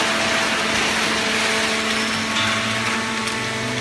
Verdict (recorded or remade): recorded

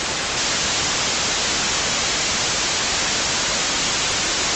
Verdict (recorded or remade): recorded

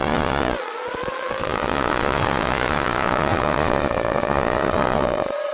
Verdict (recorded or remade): remade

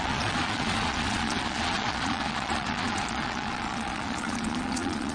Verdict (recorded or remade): remade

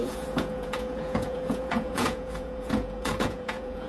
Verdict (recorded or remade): remade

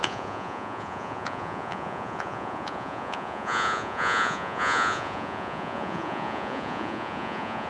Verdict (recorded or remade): remade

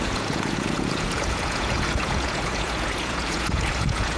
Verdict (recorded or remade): remade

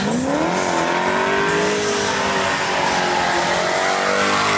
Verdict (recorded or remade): recorded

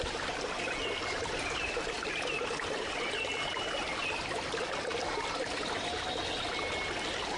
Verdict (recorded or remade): recorded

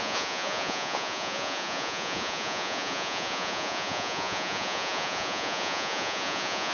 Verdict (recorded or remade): remade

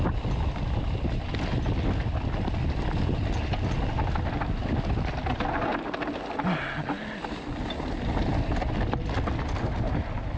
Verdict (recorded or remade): recorded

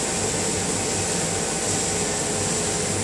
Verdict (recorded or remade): recorded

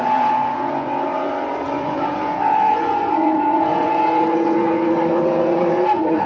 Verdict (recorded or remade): remade